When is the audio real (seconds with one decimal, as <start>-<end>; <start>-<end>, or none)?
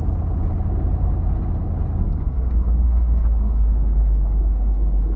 0.0-2.0